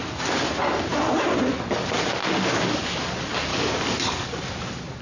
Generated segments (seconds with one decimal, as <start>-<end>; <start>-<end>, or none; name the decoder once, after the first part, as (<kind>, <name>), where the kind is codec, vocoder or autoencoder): 2.2-2.8 (codec, DAC); 3.5-4.4